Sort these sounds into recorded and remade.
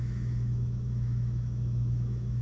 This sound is remade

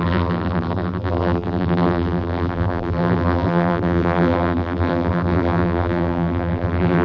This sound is remade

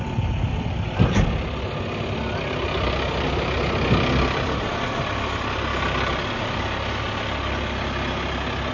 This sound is recorded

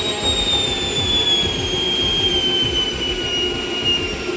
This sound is remade